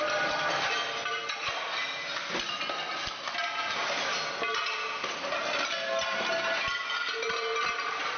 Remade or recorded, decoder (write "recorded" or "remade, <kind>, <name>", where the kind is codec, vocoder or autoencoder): recorded